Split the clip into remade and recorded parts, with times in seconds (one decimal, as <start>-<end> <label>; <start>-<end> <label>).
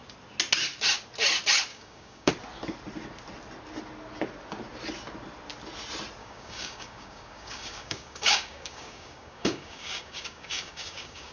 0.0-1.7 recorded; 1.7-2.3 remade; 2.3-6.2 recorded; 6.2-11.3 remade